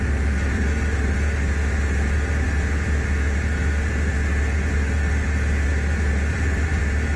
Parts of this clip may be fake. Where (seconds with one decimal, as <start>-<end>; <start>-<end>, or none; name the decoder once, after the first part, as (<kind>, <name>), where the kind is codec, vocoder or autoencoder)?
6.3-6.8 (vocoder, BigVGAN v2)